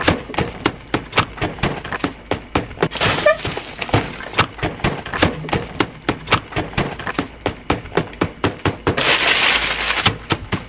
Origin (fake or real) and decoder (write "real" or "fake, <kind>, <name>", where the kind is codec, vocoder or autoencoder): real